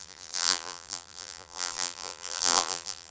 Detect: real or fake fake